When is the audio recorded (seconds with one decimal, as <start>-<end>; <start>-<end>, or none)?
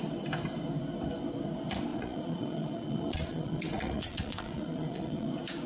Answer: 0.0-1.9; 5.3-5.7